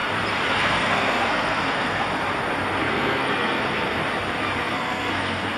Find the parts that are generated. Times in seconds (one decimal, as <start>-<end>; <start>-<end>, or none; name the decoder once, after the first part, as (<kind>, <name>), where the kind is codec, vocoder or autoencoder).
0.5-2.1 (codec, SNAC); 2.8-4.0; 4.6-5.6

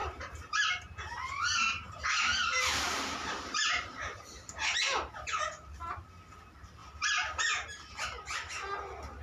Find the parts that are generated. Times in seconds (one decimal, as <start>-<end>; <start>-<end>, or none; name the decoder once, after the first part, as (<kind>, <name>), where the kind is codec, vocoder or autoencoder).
0.0-4.5 (vocoder, BigVGAN v2); 6.8-8.5

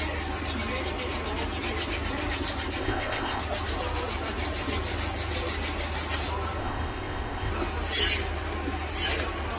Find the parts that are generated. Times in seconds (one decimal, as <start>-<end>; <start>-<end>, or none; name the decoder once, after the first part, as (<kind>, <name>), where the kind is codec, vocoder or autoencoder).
2.8-3.4 (codec, ZipCodec); 6.6-7.5

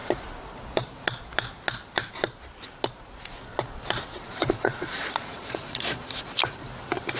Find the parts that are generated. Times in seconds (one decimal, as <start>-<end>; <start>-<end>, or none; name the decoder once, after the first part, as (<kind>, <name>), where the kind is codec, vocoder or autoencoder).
4.1-6.1 (vocoder, Vocos)

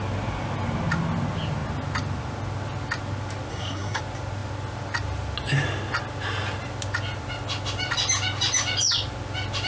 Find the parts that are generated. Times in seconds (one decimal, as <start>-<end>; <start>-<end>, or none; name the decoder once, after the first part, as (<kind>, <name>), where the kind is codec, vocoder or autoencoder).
3.5-4.0 (codec, SNAC)

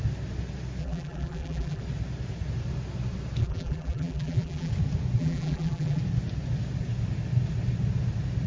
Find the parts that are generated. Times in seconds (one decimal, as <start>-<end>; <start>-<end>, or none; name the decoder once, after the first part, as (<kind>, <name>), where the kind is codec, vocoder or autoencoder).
0.8-1.8 (vocoder, BigVGAN v2); 3.4-4.7; 5.2-6.0

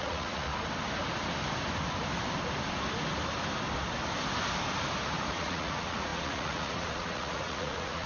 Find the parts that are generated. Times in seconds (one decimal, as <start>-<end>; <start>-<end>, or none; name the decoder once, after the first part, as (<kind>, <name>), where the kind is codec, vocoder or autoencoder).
0.0-0.5 (vocoder, Vocos); 5.3-8.1